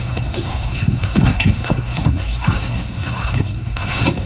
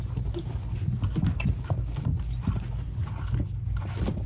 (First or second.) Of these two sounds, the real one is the second